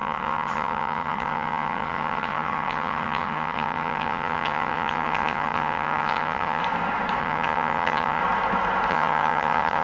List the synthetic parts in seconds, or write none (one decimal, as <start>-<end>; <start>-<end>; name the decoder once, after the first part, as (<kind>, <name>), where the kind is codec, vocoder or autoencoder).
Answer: 0.0-6.6 (vocoder, HiFi-GAN); 7.2-8.2; 8.9-9.8